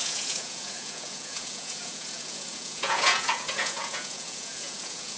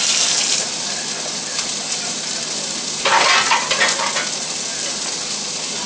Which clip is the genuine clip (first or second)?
second